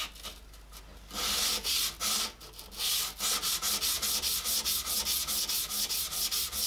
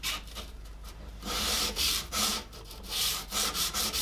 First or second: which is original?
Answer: first